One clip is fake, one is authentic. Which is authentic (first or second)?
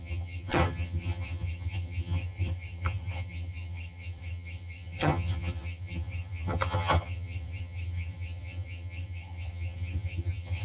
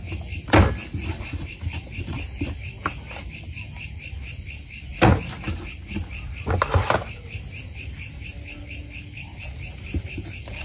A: second